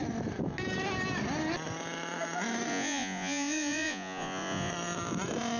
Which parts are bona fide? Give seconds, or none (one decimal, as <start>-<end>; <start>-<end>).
0.0-2.7; 4.7-5.6